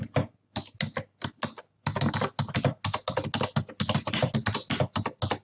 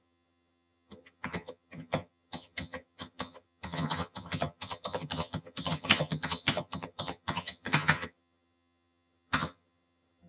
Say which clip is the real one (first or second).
first